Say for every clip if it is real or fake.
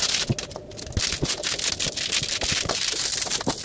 real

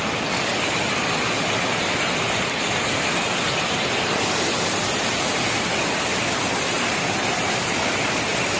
real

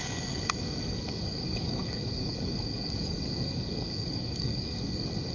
fake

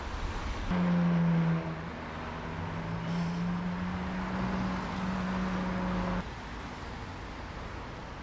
real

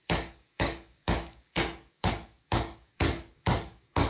fake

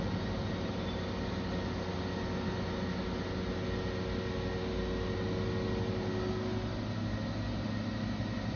real